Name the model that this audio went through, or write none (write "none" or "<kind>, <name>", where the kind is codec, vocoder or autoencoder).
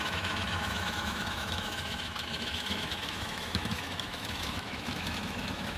autoencoder, DAC-VAE